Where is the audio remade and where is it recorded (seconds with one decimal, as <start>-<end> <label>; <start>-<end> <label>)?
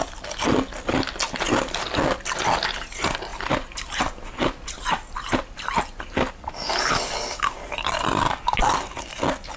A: 0.0-9.6 recorded